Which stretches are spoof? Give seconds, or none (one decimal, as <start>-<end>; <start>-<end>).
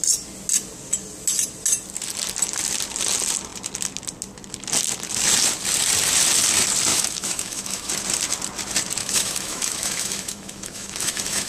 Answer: 6.9-7.9; 9.0-11.5